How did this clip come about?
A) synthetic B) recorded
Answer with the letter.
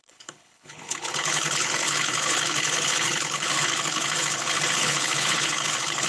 A